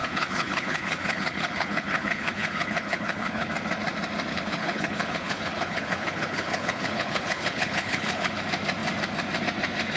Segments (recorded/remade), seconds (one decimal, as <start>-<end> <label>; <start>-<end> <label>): 0.0-3.5 remade; 3.5-4.3 recorded; 4.3-8.4 remade; 8.4-10.0 recorded